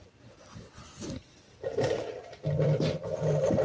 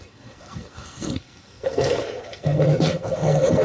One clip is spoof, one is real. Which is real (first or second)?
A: first